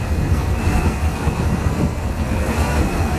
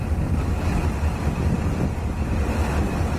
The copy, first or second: first